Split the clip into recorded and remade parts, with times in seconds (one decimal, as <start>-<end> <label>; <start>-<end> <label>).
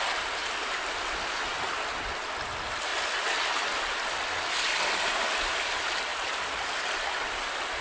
0.0-7.8 recorded